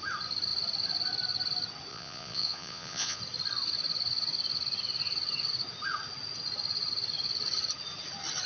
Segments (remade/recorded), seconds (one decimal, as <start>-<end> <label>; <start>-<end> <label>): 0.0-1.9 recorded; 1.9-3.2 remade; 3.2-8.5 recorded